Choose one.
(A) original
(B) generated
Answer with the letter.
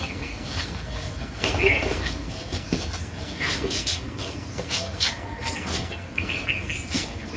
B